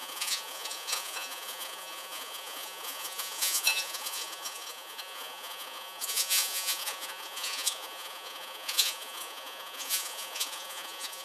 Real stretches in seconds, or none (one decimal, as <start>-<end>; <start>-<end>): none